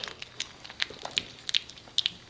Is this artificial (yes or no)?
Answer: no